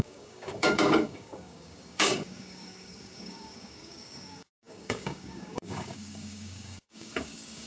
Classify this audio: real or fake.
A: fake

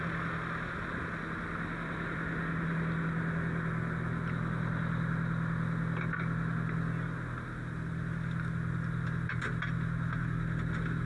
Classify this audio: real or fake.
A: real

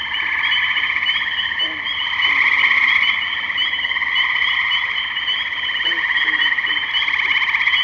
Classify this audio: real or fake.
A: real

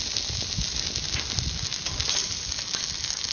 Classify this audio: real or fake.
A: real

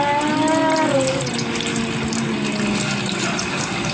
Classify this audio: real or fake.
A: real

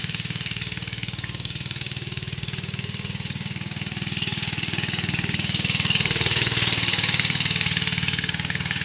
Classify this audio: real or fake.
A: fake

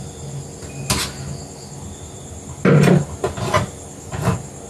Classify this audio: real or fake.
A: real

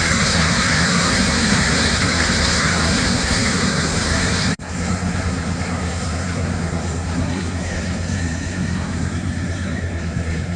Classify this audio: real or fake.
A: fake